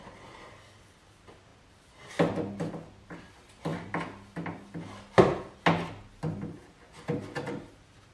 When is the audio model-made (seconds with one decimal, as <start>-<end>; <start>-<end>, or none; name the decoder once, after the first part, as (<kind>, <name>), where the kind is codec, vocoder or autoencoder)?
0.0-1.5 (vocoder, BigVGAN v2); 3.2-3.7; 6.8-8.1